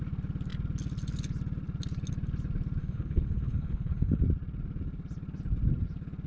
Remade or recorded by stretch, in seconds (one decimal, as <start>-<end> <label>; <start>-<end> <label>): 0.0-2.8 recorded; 2.8-4.2 remade; 4.2-6.3 recorded